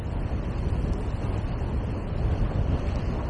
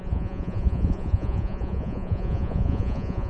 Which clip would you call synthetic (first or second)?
second